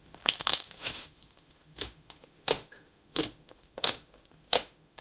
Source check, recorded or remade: remade